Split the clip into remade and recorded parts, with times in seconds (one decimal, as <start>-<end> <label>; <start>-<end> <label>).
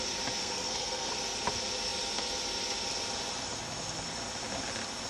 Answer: 0.0-0.4 recorded; 0.4-1.1 remade; 1.1-5.1 recorded